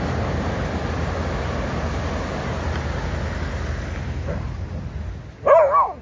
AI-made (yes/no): no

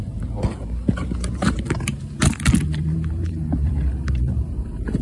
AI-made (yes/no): yes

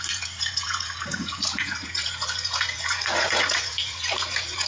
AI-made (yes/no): yes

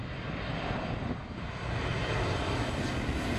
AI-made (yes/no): no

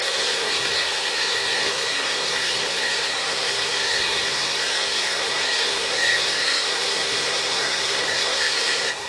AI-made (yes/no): yes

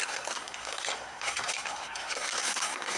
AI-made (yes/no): yes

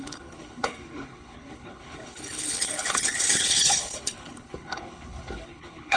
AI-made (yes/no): yes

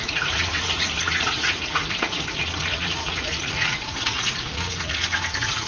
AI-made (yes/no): yes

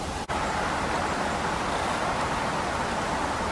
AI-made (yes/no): no